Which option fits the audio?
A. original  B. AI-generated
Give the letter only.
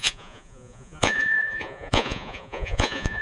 B